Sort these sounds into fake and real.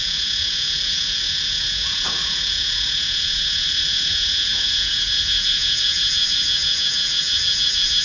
fake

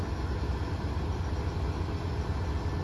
real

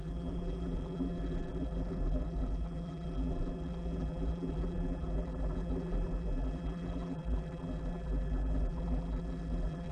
fake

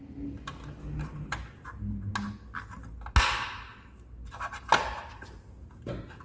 real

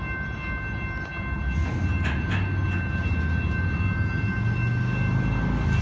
real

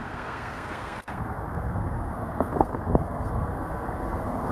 fake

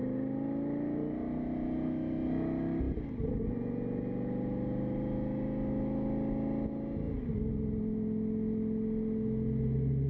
real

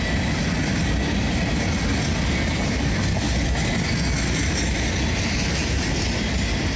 real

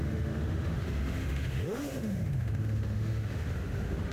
fake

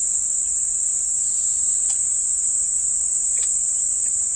fake